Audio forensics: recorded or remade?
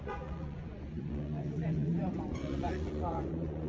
remade